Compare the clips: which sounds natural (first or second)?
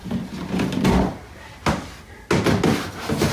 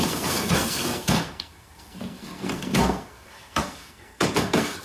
first